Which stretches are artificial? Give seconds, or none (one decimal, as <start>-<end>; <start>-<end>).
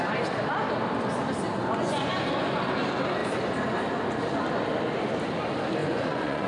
1.6-2.6; 5.8-6.5